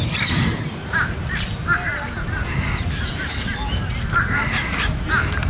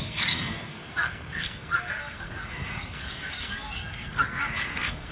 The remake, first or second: second